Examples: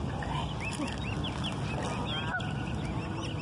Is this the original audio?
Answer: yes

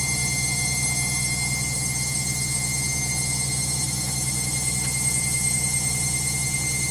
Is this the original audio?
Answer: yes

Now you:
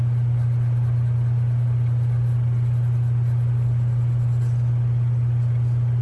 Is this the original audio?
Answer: yes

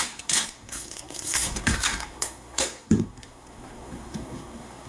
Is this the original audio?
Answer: no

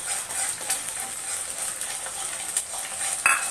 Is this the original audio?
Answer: yes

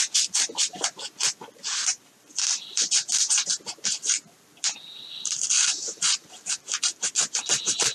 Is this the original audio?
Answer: no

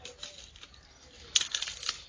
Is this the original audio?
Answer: yes